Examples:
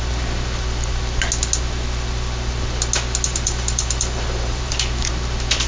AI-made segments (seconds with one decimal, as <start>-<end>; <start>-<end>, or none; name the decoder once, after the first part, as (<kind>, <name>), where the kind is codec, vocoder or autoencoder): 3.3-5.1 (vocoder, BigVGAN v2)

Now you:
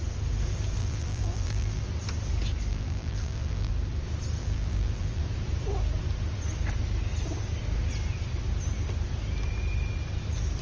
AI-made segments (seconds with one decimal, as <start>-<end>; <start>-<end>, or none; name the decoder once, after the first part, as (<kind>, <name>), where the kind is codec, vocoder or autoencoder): 0.8-1.8 (vocoder, BigVGAN v2); 2.7-3.7; 4.4-5.2

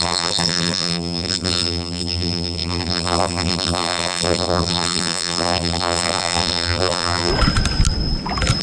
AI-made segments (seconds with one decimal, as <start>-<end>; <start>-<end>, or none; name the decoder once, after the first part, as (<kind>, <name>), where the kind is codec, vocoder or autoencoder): 0.0-7.3 (vocoder, BigVGAN v2)

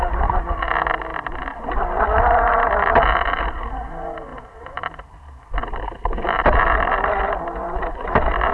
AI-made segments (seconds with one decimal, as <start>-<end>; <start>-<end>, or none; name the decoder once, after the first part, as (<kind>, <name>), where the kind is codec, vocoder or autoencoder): none

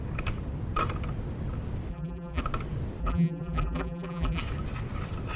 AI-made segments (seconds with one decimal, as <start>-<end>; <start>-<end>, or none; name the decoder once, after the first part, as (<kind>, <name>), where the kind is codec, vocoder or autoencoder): 1.9-2.4 (vocoder, BigVGAN v2); 3.0-4.4